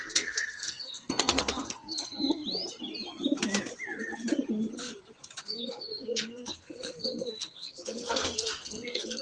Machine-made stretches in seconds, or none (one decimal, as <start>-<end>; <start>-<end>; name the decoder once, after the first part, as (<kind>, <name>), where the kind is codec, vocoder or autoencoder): 0.0-2.4 (codec, SNAC); 5.4-9.2